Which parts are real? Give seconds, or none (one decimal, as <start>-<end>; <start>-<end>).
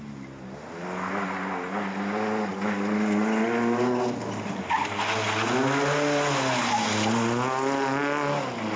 0.0-8.8